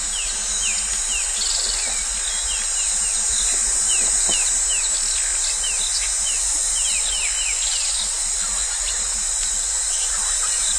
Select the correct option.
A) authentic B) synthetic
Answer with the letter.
A